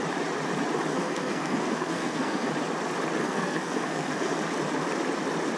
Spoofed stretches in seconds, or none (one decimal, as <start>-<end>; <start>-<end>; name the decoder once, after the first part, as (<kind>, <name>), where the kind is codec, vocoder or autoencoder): 0.9-2.5 (codec, SNAC); 3.2-4.4